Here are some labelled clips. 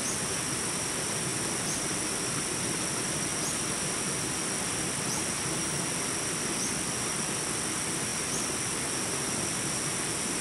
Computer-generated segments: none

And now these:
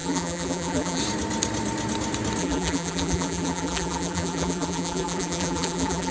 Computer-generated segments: 0.0-1.0 (vocoder, BigVGAN v2); 2.4-6.1

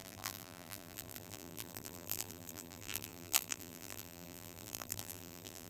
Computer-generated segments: 0.0-5.7 (vocoder, BigVGAN v2)

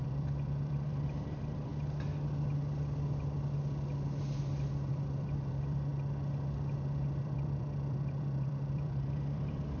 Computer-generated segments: 0.0-1.7 (vocoder, BigVGAN v2); 4.9-5.9; 7.2-9.8

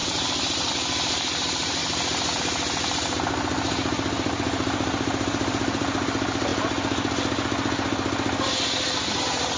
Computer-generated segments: 0.0-1.8 (vocoder, BigVGAN v2); 2.4-6.5; 9.2-9.6